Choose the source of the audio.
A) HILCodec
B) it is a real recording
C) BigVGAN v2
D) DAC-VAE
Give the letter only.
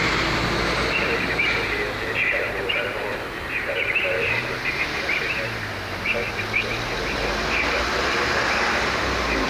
B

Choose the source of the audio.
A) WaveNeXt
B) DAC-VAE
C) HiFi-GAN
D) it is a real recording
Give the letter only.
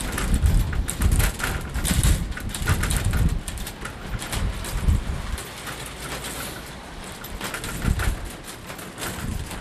D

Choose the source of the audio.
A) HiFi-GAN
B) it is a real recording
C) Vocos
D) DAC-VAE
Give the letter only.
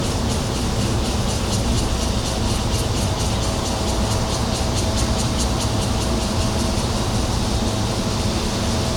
B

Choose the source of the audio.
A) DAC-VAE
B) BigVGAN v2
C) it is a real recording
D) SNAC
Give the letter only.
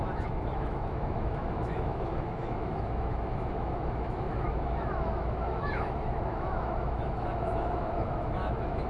A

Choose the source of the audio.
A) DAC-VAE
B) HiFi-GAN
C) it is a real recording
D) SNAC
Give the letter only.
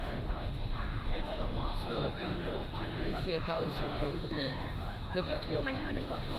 A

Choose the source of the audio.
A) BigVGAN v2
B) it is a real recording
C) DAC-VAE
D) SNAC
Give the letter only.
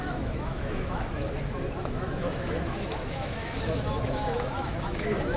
C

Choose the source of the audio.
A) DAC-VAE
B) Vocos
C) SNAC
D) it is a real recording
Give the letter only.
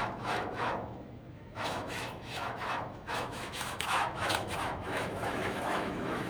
A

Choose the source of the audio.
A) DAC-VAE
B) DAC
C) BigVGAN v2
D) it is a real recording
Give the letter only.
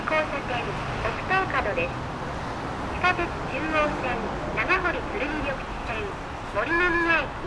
D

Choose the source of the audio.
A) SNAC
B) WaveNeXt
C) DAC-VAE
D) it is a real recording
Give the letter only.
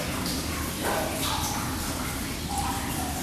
D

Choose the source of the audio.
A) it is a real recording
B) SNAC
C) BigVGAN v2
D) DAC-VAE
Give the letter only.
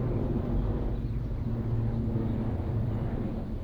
A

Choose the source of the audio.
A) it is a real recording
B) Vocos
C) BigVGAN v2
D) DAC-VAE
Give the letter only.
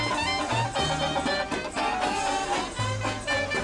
A